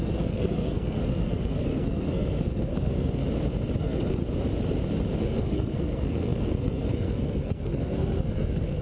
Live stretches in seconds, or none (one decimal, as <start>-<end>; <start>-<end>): 3.2-3.8; 4.2-5.2